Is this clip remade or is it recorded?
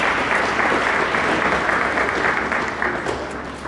recorded